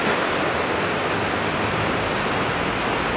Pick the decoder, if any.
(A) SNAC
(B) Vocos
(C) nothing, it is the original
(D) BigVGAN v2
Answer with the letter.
D